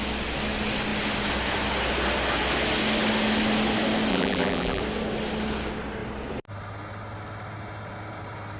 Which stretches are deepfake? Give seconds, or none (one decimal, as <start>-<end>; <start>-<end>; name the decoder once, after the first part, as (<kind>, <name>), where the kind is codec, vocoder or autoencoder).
4.1-4.8 (vocoder, BigVGAN v2)